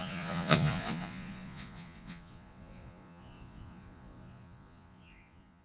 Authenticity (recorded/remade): remade